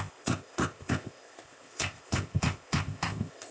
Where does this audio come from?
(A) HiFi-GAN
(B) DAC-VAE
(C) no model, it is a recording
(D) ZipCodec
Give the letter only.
D